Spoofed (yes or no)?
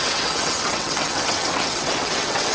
yes